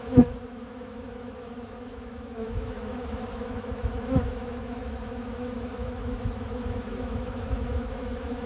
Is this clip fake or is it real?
fake